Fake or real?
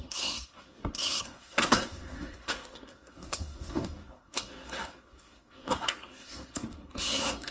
fake